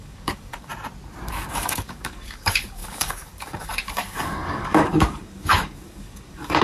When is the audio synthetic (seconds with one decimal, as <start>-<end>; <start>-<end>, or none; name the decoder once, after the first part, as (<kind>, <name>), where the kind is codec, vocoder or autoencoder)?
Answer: 0.0-0.7 (codec, DAC); 1.3-6.6